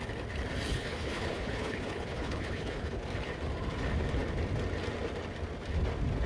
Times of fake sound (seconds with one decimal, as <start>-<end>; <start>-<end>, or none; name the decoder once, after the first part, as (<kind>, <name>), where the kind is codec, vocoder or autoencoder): 0.7-3.0 (codec, HILCodec)